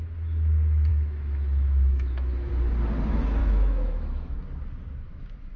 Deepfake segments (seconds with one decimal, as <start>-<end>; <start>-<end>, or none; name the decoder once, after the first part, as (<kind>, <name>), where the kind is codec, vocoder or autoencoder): 0.9-2.5 (autoencoder, DAC-VAE); 3.4-4.4